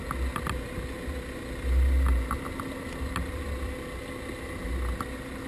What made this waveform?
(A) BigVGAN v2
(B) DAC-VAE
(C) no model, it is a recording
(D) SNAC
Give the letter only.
C